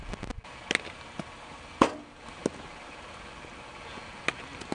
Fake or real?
real